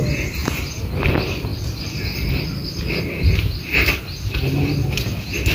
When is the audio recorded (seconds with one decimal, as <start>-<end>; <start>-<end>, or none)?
0.0-5.5